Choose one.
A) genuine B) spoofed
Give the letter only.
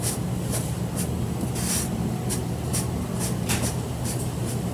A